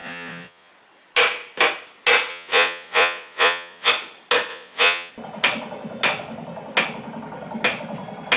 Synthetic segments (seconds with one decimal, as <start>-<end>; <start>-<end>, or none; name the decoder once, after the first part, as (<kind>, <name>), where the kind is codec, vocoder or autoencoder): 0.0-0.7 (vocoder, Vocos); 2.3-3.9; 4.5-5.1